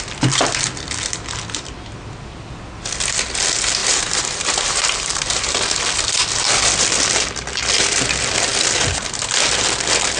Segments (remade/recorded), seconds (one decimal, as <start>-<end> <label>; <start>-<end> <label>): 0.0-3.8 recorded; 3.8-5.6 remade; 5.6-10.2 recorded